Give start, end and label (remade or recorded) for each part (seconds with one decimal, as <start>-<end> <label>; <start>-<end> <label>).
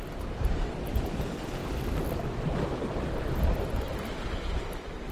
0.0-5.1 recorded